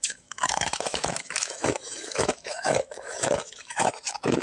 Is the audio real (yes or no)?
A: no